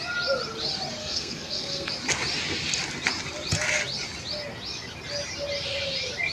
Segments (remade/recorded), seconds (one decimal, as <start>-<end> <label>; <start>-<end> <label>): 0.0-1.0 recorded; 1.0-1.9 remade; 1.9-6.3 recorded